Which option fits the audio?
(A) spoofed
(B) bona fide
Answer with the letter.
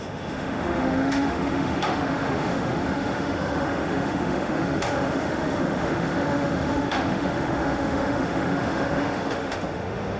A